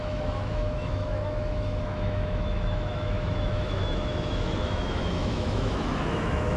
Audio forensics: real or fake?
fake